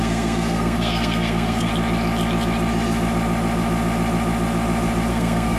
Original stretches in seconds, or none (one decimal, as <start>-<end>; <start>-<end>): 1.7-5.1